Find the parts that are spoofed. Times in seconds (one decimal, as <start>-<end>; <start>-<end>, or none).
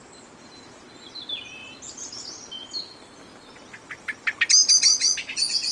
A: none